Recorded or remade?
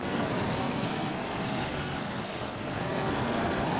remade